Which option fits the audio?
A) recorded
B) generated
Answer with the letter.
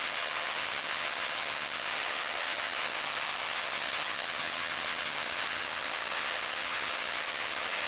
B